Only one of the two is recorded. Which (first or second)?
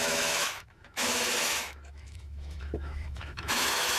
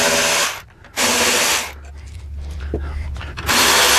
second